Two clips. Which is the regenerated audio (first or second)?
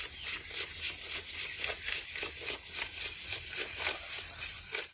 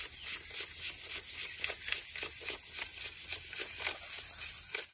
first